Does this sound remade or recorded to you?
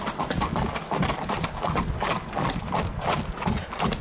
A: recorded